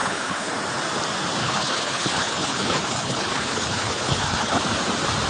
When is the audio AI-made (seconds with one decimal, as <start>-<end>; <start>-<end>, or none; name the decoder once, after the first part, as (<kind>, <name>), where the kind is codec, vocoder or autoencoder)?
0.0-0.5 (codec, HILCodec); 1.4-4.6